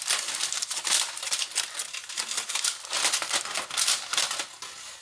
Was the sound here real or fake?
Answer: real